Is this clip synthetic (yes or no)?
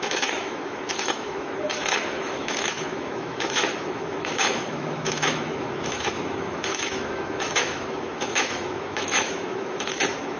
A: yes